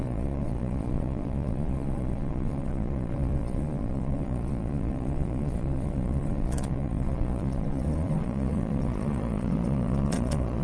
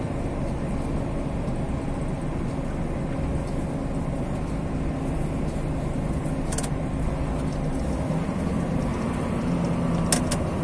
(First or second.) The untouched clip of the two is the second